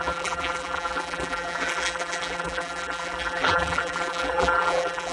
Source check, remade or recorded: remade